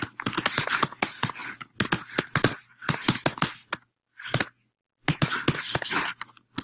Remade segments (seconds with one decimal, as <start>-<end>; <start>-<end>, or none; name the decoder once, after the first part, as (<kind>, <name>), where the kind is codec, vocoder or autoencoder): none